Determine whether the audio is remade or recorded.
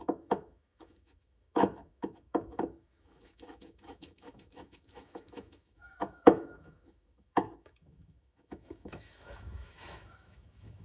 remade